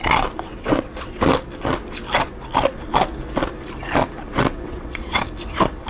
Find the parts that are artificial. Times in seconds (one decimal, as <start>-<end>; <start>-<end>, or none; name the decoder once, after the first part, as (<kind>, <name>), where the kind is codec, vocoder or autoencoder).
0.5-1.2 (vocoder, WaveNeXt); 4.3-5.2